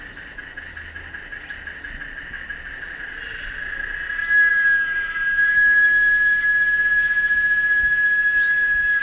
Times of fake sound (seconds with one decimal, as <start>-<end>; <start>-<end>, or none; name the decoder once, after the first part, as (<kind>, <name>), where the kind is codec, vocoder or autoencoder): 4.5-9.0 (autoencoder, DAC-VAE)